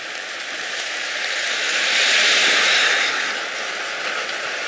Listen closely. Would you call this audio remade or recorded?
recorded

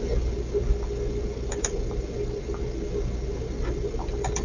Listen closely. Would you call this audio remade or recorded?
recorded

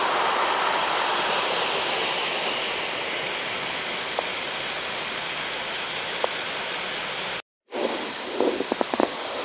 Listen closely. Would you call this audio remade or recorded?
recorded